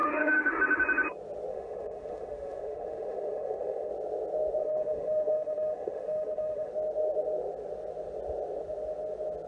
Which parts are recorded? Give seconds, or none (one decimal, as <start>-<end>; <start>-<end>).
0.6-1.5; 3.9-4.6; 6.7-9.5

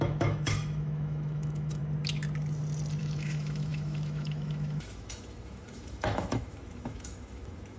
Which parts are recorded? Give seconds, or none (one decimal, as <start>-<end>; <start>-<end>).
1.8-3.0

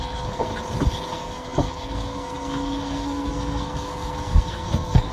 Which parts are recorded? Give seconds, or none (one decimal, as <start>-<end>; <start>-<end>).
0.5-1.1

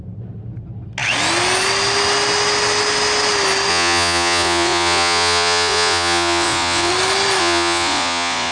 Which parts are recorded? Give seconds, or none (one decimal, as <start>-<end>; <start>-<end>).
0.0-3.7; 6.9-7.4